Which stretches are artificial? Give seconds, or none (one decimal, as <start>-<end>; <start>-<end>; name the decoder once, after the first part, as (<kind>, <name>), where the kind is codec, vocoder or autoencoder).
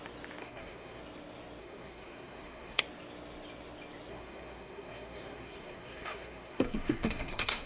0.4-1.0 (codec, SNAC); 1.6-2.8; 4.1-7.7